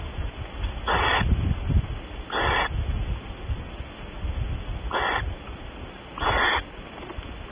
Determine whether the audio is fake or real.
real